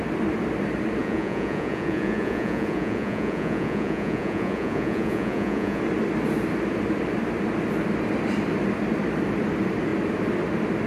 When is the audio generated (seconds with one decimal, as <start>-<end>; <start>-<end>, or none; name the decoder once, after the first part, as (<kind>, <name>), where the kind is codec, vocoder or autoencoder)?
1.0-5.8 (vocoder, Vocos)